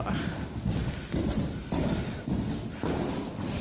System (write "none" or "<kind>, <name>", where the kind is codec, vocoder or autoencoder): none